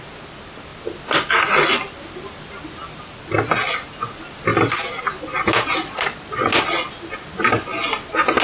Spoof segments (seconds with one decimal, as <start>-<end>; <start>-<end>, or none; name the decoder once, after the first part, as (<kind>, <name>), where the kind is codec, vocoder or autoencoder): 5.8-6.5 (vocoder, Vocos)

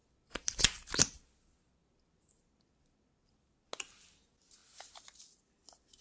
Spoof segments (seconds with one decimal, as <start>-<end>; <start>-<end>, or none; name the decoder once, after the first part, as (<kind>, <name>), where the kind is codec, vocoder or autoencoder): none

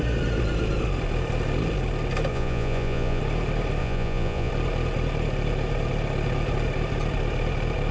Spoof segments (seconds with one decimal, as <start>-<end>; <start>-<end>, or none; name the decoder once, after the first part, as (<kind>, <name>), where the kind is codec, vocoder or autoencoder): 2.3-3.2 (vocoder, Vocos); 3.8-4.5

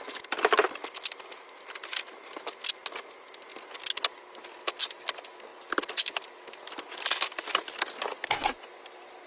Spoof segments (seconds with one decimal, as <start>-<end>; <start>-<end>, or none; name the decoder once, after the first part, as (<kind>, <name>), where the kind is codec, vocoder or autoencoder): none

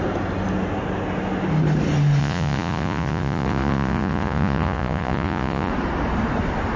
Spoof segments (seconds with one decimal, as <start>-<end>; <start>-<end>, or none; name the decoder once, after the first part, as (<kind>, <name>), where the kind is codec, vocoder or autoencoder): 2.2-5.7 (vocoder, Vocos)

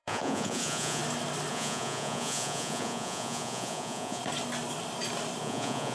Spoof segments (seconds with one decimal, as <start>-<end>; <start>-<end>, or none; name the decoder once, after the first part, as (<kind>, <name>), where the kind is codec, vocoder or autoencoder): 0.0-1.0 (vocoder, Vocos); 1.5-4.2; 5.4-5.9

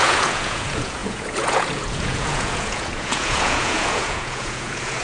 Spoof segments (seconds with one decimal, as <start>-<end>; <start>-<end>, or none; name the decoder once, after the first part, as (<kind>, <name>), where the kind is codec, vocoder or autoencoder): 0.0-5.0 (vocoder, Vocos)